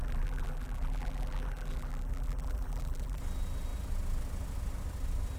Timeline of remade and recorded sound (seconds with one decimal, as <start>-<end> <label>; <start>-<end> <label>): 0.0-3.2 remade; 3.2-5.4 recorded